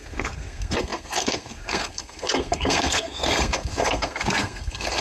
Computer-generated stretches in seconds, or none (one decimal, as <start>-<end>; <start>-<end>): 0.0-5.0